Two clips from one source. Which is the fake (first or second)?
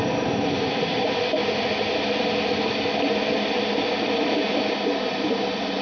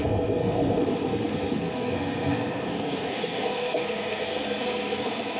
second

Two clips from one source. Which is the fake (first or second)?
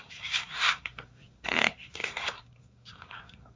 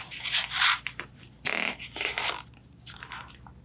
first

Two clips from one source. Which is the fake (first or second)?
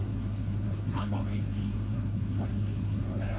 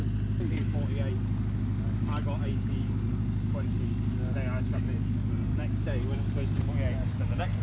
first